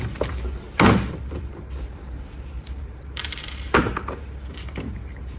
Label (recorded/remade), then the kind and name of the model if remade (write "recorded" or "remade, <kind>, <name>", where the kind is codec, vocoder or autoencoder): remade, vocoder, BigVGAN v2